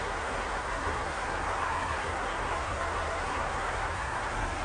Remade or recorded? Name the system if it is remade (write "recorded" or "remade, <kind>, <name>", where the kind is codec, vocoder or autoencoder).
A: remade, codec, SNAC